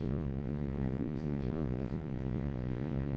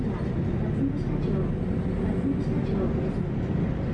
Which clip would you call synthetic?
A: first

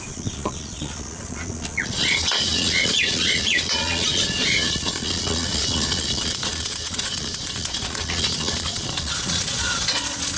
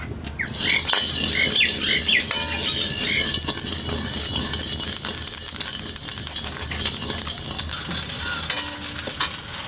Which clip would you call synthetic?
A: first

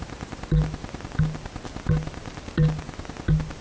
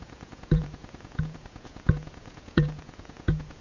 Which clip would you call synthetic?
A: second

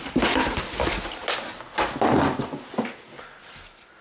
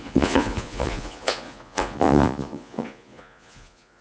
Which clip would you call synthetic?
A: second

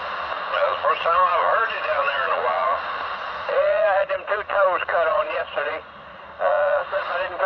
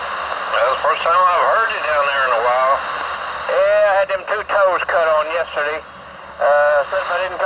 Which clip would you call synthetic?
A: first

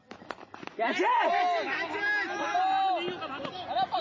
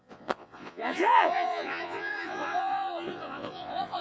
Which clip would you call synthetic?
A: second